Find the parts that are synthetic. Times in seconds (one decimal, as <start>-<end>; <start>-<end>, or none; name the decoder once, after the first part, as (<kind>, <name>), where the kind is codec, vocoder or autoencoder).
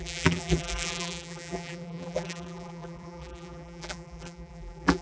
0.0-5.0 (vocoder, BigVGAN v2)